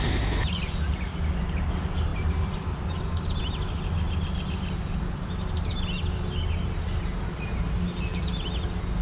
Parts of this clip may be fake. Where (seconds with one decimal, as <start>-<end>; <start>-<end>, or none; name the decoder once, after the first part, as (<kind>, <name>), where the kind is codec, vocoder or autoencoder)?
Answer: 2.1-3.4 (vocoder, BigVGAN v2)